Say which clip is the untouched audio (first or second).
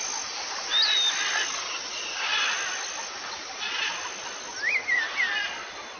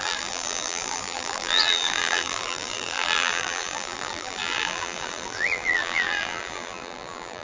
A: first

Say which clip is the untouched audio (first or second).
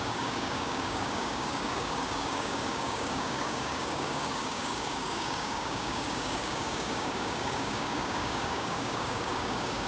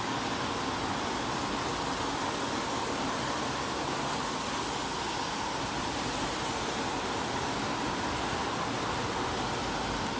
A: second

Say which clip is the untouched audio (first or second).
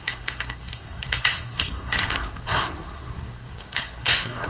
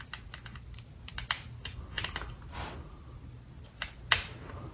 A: second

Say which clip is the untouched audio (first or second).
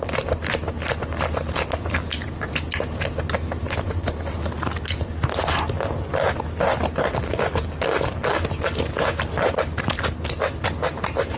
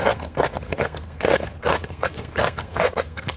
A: first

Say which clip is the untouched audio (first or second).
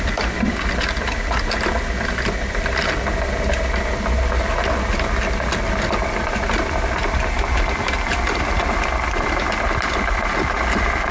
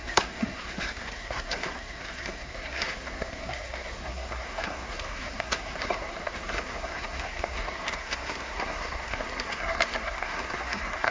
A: first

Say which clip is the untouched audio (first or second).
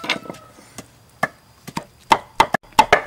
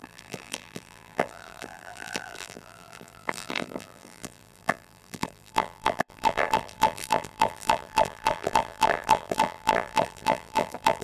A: first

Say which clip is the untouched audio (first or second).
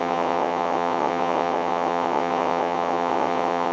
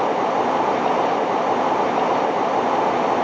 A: second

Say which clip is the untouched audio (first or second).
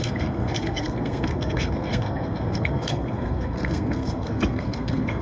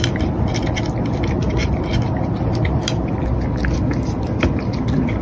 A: second